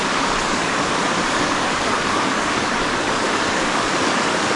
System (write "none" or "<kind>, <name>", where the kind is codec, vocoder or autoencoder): codec, DAC